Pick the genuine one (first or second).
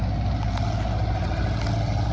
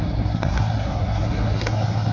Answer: first